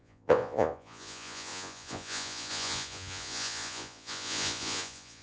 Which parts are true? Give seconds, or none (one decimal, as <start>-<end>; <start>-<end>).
none